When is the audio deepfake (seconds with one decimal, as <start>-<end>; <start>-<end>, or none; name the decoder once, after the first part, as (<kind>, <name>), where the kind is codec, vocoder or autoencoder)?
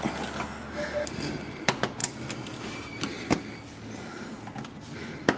none